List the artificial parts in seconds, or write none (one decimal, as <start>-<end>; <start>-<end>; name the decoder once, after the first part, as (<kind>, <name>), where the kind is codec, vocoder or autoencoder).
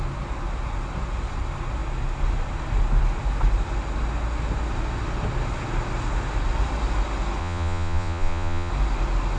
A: 7.4-8.7 (vocoder, Vocos)